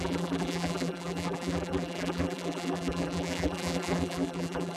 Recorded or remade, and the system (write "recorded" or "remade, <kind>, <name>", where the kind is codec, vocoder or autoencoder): remade, vocoder, BigVGAN v2